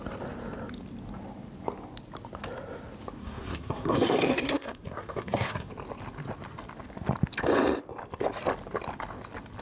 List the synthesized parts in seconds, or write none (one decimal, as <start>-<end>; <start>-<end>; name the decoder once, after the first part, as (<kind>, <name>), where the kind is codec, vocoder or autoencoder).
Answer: 3.2-5.7 (codec, SNAC)